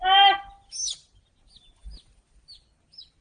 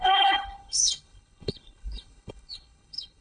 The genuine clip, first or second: first